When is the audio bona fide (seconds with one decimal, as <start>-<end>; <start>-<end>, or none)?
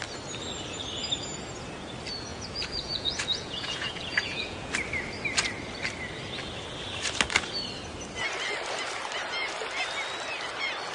0.0-2.3; 4.7-10.9